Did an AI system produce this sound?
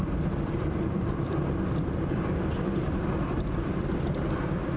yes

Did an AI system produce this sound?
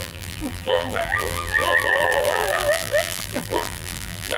yes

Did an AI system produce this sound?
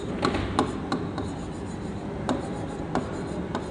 no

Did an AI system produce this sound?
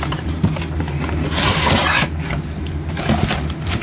yes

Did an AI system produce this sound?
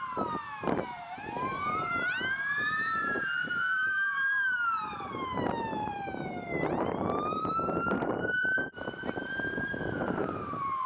yes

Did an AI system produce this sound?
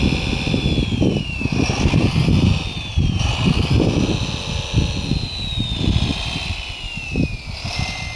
no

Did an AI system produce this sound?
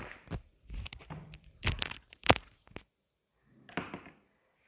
no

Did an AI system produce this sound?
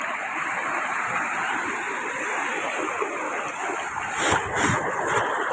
yes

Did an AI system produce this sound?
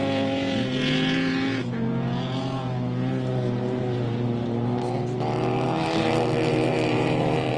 no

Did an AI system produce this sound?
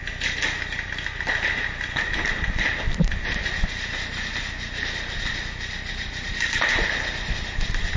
no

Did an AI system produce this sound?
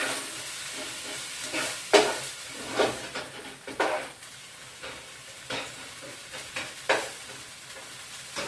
yes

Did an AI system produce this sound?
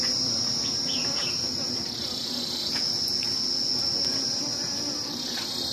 no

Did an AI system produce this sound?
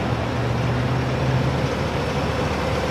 no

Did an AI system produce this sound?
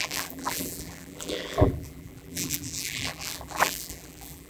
yes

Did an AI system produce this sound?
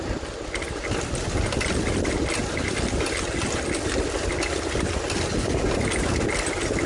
no